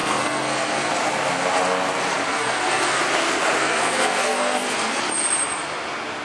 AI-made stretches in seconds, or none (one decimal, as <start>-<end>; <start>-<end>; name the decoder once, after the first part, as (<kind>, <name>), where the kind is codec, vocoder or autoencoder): 0.0-0.9 (codec, SNAC); 2.3-3.0; 3.6-5.0